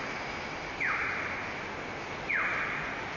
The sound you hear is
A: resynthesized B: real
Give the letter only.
B